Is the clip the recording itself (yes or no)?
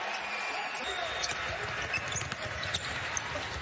yes